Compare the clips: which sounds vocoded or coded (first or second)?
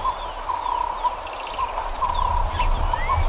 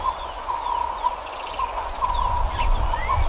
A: second